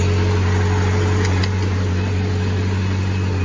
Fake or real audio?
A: real